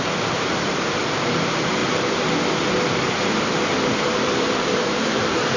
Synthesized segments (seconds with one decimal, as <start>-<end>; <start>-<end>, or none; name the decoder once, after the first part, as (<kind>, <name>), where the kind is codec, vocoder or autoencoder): 0.0-1.8 (vocoder, BigVGAN v2); 4.0-5.6